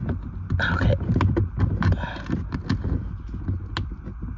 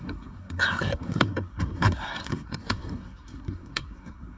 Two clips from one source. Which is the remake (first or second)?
second